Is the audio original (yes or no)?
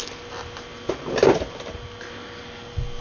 yes